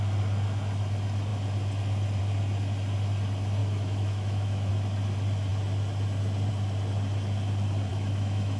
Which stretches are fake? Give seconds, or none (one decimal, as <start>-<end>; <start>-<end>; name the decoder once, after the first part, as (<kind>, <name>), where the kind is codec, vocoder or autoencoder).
3.6-4.7 (autoencoder, DAC-VAE); 7.9-8.6